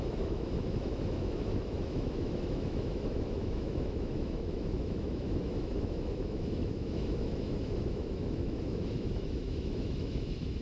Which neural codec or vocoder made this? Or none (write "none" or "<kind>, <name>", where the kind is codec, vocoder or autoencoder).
autoencoder, DAC-VAE